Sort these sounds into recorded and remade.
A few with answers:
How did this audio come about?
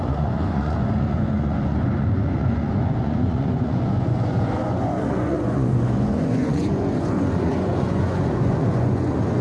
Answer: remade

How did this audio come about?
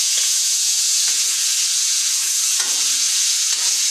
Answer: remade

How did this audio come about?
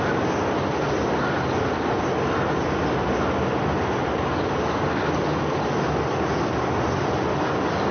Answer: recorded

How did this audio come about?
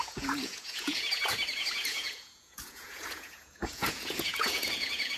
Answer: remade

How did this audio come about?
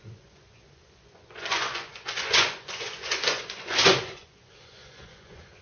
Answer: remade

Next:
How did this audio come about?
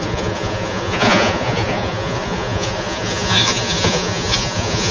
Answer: remade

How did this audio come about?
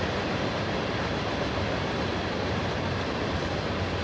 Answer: recorded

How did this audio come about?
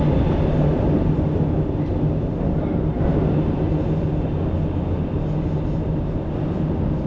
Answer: recorded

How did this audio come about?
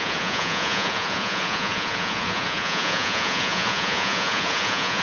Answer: remade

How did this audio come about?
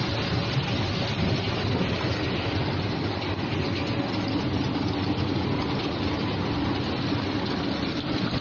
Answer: recorded